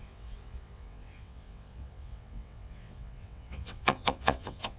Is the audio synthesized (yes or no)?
yes